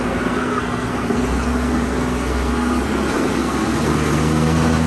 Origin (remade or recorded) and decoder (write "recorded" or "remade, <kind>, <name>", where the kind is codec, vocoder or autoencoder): remade, codec, SNAC